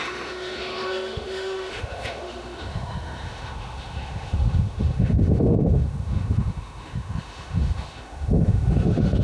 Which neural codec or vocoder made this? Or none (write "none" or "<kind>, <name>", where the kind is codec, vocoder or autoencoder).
autoencoder, DAC-VAE